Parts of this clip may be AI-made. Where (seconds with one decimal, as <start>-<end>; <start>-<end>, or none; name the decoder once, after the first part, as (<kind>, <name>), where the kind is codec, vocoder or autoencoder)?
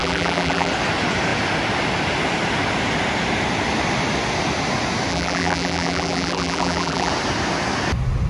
0.0-0.7 (vocoder, BigVGAN v2); 5.1-7.1